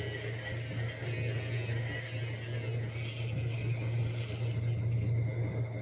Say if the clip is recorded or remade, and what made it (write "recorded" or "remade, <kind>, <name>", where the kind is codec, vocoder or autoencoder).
recorded